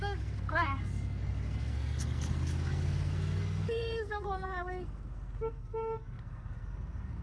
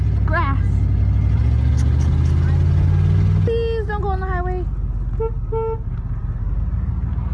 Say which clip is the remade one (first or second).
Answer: first